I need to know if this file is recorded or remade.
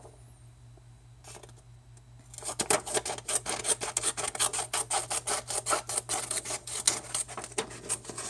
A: recorded